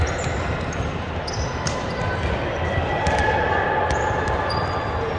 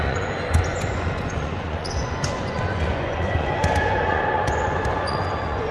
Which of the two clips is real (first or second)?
first